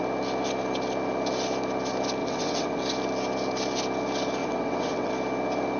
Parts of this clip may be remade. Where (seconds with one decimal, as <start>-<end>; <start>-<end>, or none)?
2.2-2.8; 4.4-5.1